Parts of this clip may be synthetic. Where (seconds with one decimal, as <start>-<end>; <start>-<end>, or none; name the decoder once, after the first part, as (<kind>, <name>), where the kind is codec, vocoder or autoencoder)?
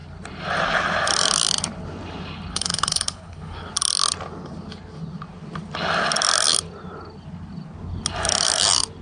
2.5-3.7 (codec, HILCodec)